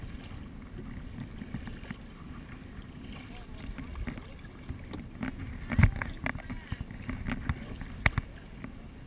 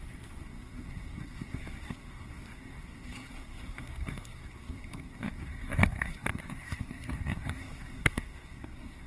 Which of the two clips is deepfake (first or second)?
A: second